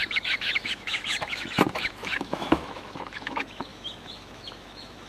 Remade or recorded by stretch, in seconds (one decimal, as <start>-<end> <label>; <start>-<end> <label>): 0.0-5.1 remade